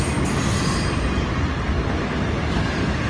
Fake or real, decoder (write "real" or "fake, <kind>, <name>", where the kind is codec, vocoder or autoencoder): real